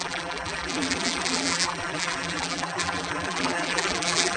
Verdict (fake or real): fake